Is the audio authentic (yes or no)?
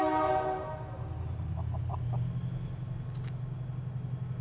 yes